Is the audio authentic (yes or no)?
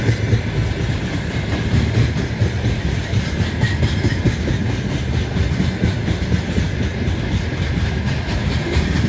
yes